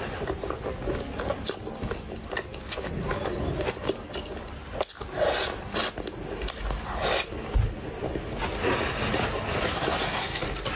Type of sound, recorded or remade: recorded